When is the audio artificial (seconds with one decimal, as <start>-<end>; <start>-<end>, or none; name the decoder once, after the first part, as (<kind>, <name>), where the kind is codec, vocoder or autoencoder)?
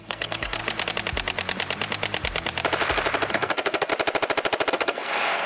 0.0-0.6 (codec, SNAC); 3.3-3.9; 4.7-5.5